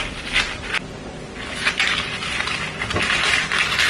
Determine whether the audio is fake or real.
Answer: real